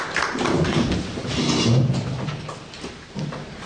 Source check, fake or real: real